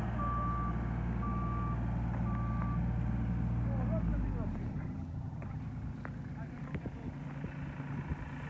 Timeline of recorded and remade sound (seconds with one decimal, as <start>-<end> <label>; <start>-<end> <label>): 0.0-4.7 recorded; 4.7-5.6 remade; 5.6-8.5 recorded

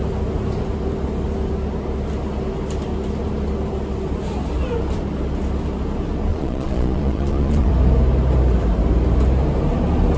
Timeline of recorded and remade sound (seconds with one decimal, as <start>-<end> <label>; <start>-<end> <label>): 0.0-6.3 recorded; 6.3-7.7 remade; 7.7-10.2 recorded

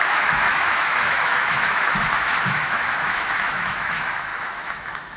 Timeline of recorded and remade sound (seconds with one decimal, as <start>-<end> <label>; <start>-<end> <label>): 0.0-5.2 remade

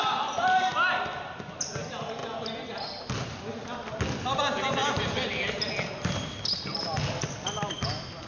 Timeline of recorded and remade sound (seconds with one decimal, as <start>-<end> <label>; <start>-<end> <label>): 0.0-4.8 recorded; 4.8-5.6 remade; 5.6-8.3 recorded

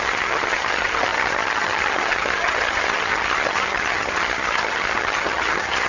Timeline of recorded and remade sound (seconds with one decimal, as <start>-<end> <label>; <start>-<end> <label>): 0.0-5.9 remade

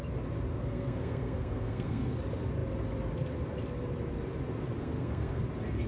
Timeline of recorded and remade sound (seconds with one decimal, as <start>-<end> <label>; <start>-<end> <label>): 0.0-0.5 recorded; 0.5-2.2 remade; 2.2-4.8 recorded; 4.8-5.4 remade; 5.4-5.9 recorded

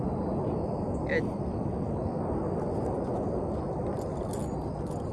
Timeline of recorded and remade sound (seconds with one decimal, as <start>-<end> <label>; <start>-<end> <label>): 0.0-5.1 recorded